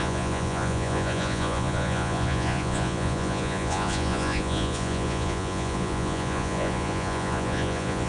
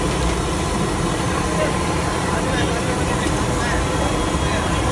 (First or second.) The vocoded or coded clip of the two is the first